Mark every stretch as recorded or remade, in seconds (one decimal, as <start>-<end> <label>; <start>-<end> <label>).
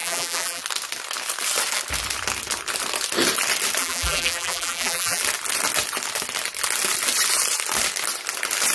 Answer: 0.0-0.6 remade; 0.6-3.8 recorded; 3.8-5.2 remade; 5.2-8.7 recorded